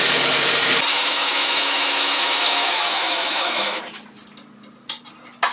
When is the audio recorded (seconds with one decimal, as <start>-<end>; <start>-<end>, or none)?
0.0-0.9; 3.8-5.5